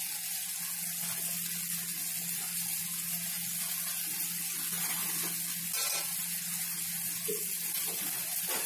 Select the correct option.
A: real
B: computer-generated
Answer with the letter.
A